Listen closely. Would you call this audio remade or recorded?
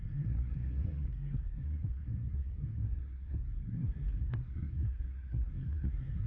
remade